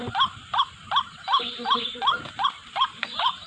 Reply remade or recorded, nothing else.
remade